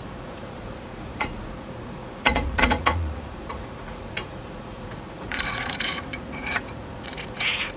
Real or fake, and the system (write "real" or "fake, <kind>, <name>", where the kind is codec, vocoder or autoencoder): fake, vocoder, Vocos